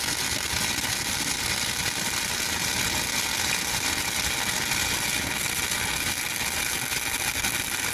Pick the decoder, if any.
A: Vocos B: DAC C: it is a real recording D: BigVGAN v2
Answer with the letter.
C